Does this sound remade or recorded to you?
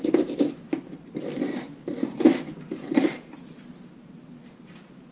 recorded